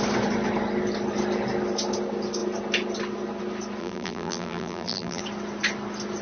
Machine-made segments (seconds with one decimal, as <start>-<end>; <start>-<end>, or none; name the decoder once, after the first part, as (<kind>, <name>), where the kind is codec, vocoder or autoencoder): 3.8-5.2 (vocoder, BigVGAN v2)